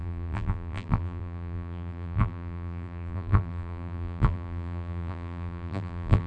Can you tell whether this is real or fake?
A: fake